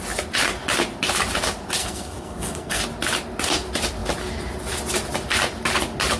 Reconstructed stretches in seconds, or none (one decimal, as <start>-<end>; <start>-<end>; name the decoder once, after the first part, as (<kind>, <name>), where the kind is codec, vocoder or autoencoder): 1.8-2.8 (codec, SNAC)

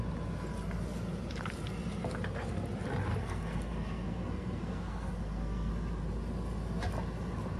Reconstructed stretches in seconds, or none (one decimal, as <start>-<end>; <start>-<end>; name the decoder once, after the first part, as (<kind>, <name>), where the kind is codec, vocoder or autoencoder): 3.1-5.7 (codec, SNAC)

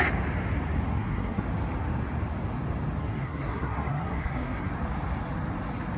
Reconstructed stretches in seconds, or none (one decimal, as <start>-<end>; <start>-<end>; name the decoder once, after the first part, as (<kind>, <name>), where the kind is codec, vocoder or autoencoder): 0.9-1.4 (codec, SNAC); 3.0-4.7

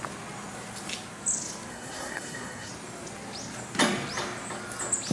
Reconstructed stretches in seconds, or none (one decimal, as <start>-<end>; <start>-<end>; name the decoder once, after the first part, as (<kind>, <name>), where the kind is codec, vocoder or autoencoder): 1.7-2.7 (codec, SNAC)